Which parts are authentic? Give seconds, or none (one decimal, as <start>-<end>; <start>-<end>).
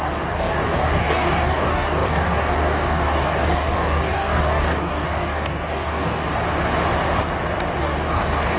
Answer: 6.2-7.8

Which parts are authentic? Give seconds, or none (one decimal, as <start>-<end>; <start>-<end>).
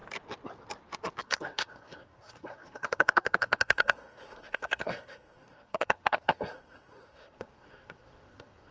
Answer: 0.0-1.2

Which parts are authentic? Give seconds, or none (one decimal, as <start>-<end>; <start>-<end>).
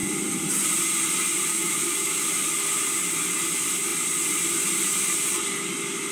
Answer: 0.0-1.5; 2.2-6.1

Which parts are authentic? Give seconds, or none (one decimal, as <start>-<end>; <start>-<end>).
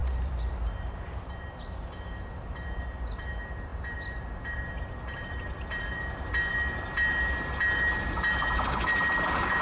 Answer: 0.5-9.6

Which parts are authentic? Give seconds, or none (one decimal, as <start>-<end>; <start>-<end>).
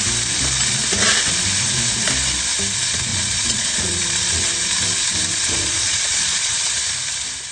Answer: 0.0-3.1; 4.5-5.3; 6.7-7.5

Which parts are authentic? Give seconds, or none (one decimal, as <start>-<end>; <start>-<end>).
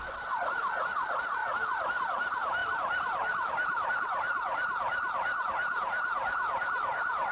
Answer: 0.0-7.3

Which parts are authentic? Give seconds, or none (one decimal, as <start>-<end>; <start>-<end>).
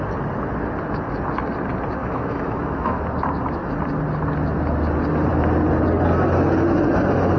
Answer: 0.0-2.0; 3.0-7.4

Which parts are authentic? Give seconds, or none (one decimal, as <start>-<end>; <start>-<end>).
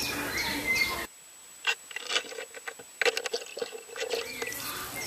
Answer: 0.0-1.5; 2.1-5.1